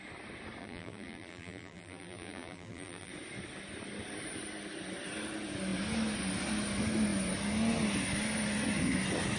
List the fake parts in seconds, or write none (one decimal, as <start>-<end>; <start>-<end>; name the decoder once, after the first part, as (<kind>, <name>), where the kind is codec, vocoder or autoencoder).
0.6-3.1 (vocoder, BigVGAN v2)